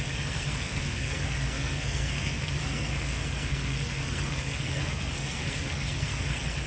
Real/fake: fake